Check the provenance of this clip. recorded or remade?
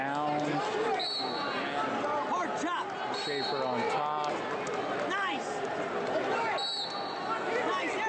recorded